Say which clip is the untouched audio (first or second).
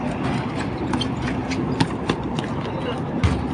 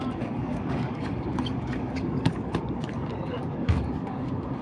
first